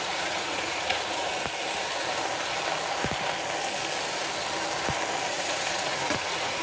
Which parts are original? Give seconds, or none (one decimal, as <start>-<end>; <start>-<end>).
1.3-5.3

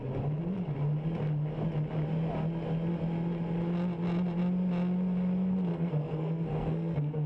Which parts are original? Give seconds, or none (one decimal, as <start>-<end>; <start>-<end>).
0.0-5.7